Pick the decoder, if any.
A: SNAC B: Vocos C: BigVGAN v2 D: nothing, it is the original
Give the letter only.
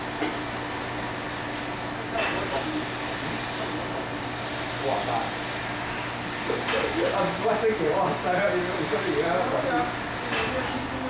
D